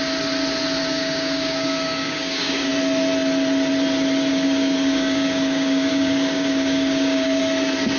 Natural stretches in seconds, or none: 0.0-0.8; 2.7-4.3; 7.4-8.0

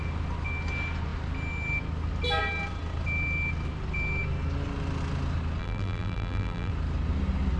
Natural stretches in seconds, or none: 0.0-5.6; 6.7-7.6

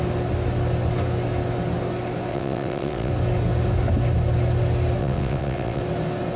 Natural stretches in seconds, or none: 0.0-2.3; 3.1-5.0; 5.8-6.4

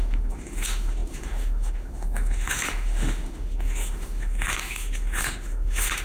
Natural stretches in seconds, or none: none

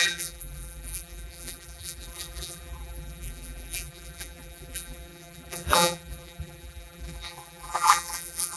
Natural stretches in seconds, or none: none